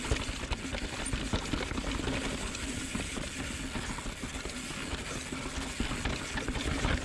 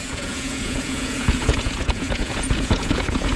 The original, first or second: first